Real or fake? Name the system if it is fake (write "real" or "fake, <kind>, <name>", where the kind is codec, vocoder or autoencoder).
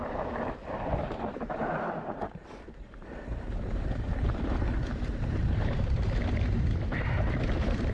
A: fake, vocoder, BigVGAN v2